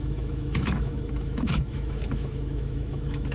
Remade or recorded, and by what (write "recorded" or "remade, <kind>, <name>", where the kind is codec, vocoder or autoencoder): remade, autoencoder, DAC-VAE